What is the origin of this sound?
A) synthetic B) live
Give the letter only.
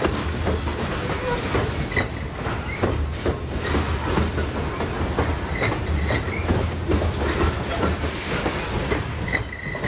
B